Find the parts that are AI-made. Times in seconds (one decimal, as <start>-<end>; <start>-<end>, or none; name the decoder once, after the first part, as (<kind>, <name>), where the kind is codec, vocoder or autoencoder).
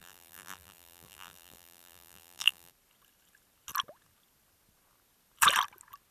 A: 0.0-2.7 (vocoder, BigVGAN v2)